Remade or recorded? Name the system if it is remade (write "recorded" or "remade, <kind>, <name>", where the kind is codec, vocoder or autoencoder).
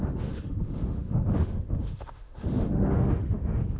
remade, autoencoder, DAC-VAE